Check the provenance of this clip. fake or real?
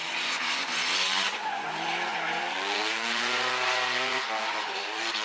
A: fake